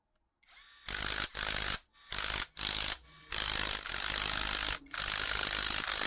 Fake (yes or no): no